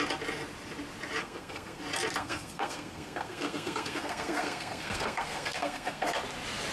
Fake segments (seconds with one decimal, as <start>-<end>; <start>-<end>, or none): 1.2-1.8; 2.2-6.2